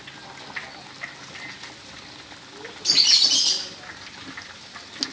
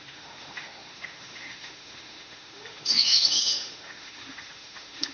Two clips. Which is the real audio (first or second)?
first